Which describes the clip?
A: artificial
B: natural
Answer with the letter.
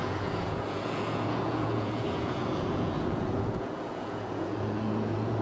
A